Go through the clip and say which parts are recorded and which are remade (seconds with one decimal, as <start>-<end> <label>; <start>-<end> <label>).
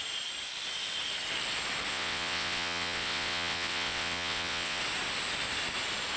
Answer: 0.0-1.9 recorded; 1.9-4.8 remade; 4.8-6.2 recorded